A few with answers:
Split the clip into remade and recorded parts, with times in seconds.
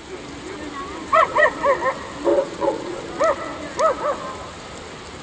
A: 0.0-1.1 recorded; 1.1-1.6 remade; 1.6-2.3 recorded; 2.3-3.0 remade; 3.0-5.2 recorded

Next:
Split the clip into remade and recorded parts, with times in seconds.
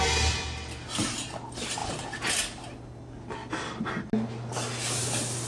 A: 0.0-5.5 recorded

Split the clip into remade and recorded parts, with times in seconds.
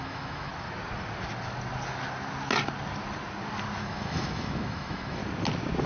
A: 0.0-0.5 remade; 0.5-3.8 recorded; 3.8-5.2 remade; 5.2-5.9 recorded